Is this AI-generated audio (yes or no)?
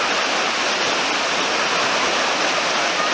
no